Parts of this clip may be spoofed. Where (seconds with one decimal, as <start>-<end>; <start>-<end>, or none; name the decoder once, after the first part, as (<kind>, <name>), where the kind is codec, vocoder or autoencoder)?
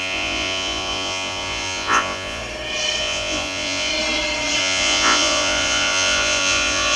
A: 0.0-2.4 (vocoder, Vocos); 3.0-3.9; 4.6-7.0